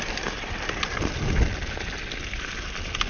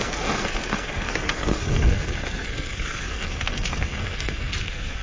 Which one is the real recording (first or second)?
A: first